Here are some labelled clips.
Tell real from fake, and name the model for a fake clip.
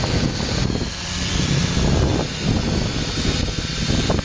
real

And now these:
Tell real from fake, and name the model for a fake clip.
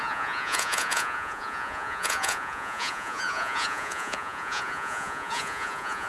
fake, vocoder, Vocos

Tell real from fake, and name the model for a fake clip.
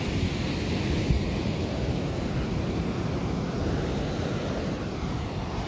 real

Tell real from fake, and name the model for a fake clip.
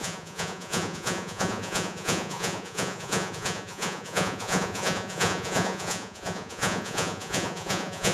fake, vocoder, Vocos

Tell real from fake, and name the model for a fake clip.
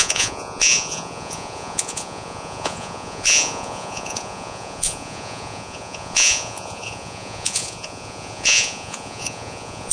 fake, vocoder, Vocos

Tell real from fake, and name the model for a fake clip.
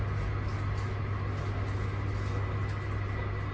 real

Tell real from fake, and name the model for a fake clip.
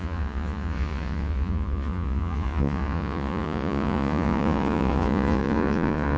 fake, vocoder, Vocos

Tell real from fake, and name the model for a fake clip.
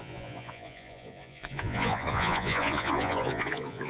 fake, vocoder, Vocos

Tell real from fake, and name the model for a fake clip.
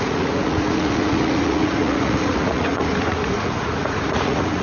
fake, vocoder, Vocos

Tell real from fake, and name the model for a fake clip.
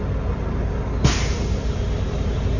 real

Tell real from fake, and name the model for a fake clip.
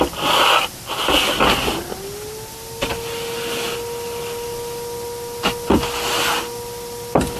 real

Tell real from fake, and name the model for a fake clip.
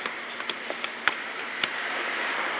real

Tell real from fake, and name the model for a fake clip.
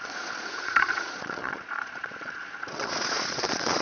fake, vocoder, Vocos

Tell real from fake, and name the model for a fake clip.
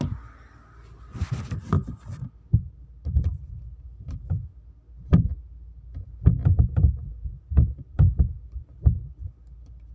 real